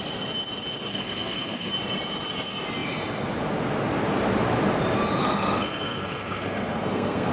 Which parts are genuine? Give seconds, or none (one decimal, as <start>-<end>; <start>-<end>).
0.0-0.9; 1.7-5.2